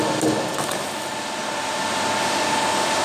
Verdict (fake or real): real